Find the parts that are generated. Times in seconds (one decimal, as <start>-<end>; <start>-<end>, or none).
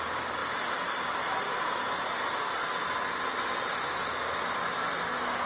none